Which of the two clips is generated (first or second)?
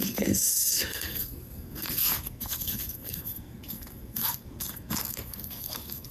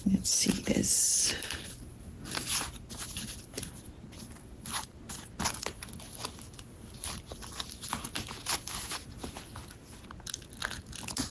first